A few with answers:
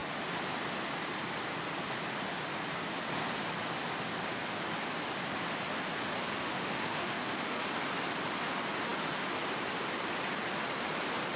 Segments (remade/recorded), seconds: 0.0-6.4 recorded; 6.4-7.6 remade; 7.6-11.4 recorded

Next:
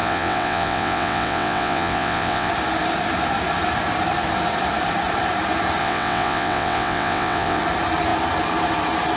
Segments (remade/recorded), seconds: 0.0-2.5 remade; 2.5-5.8 recorded; 5.8-7.6 remade; 7.6-9.2 recorded

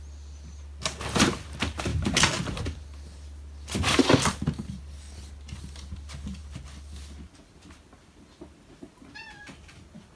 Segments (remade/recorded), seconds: 0.0-10.2 recorded

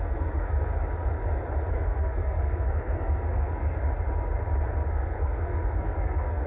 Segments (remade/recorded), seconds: 0.0-0.7 remade; 0.7-1.7 recorded; 1.7-3.8 remade; 3.8-4.9 recorded; 4.9-6.5 remade

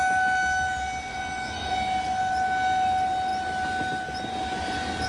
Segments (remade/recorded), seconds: 0.0-1.1 recorded; 1.1-1.7 remade; 1.7-5.1 recorded

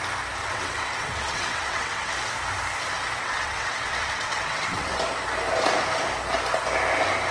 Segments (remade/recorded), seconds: 0.0-0.4 recorded; 0.4-2.1 remade; 2.1-3.2 recorded; 3.2-5.0 remade; 5.0-7.3 recorded

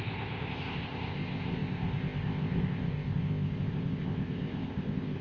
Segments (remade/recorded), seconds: 0.0-5.2 remade